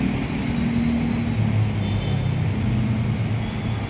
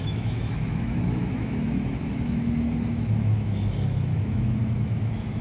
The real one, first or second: first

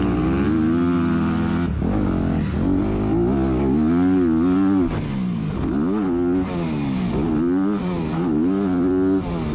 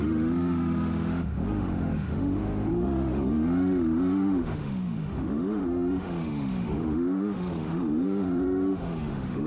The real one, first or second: first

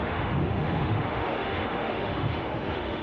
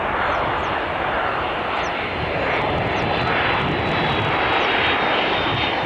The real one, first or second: second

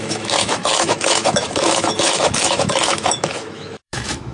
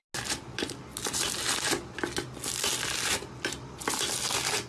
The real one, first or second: second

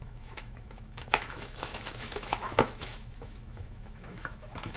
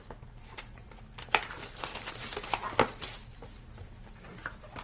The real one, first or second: second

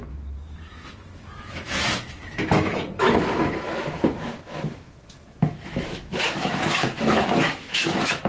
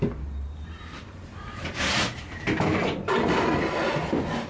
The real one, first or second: second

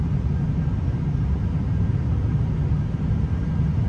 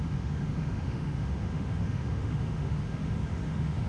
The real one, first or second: first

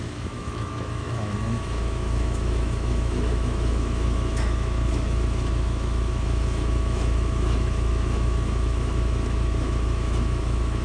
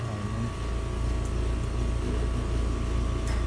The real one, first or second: second